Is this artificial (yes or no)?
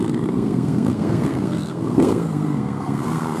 yes